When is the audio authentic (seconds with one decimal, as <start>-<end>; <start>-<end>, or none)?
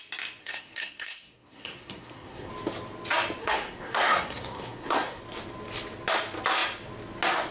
0.0-0.4; 2.5-3.4; 5.2-7.5